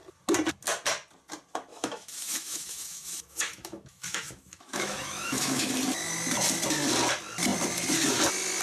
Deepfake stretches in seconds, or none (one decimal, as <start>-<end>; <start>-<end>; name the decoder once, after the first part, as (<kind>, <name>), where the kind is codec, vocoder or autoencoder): 1.7-5.7 (autoencoder, DAC-VAE)